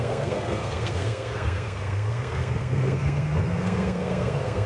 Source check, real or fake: fake